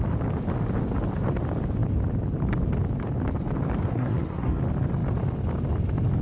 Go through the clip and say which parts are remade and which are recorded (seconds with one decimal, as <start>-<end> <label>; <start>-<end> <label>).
0.0-3.9 recorded; 3.9-4.6 remade; 4.6-6.2 recorded